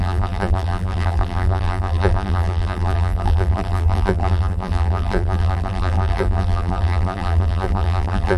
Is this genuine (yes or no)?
no